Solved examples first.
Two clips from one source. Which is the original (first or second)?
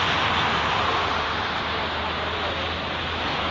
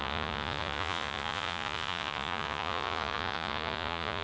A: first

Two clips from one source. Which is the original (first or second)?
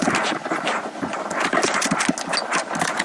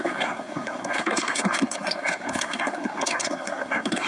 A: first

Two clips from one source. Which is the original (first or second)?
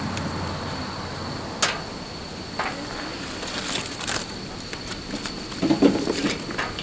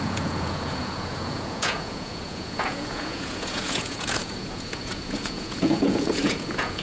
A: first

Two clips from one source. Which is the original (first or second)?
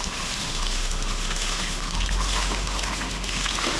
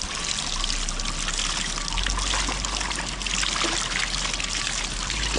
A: second